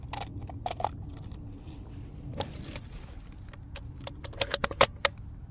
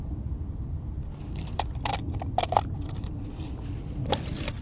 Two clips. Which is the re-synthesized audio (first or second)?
second